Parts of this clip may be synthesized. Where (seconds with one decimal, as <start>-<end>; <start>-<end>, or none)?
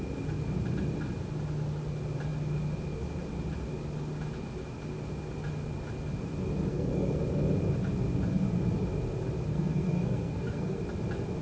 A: 6.7-7.2; 9.5-10.8